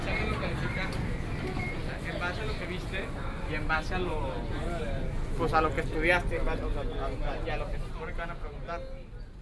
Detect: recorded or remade recorded